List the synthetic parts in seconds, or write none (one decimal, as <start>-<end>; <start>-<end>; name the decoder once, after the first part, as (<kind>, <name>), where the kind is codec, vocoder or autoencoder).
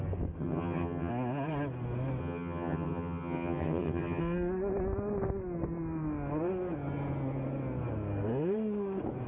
0.4-1.1 (vocoder, HiFi-GAN); 2.2-4.2